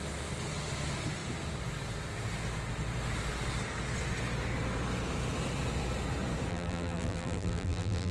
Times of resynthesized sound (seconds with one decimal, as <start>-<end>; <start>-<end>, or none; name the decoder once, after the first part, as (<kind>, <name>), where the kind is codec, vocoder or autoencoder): 6.5-8.1 (vocoder, BigVGAN v2)